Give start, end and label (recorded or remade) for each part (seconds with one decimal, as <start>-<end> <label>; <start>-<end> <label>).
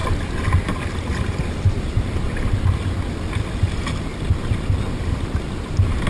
0.0-2.4 remade; 2.4-6.1 recorded